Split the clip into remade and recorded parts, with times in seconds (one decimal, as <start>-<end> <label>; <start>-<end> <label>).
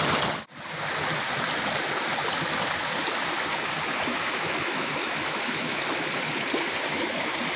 0.0-4.1 recorded; 4.1-5.8 remade; 5.8-7.6 recorded